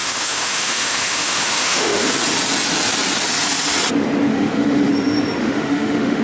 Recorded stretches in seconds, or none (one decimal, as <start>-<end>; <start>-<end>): 2.1-4.3; 4.9-5.4